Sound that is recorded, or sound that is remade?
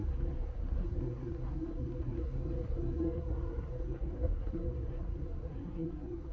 remade